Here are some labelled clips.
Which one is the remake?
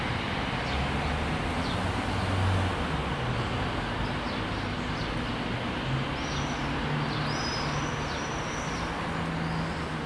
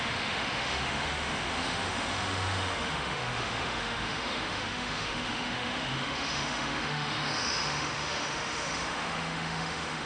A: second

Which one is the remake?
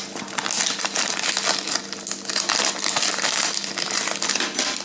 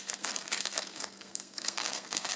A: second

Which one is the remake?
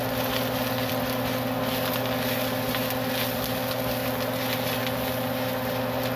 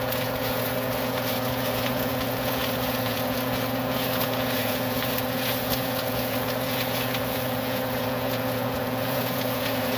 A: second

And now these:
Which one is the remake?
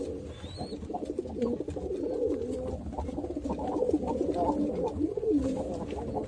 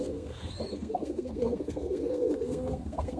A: second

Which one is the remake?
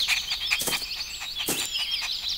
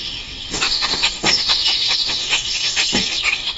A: second